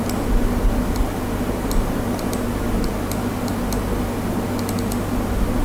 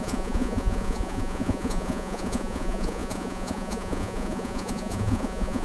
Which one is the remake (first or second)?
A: second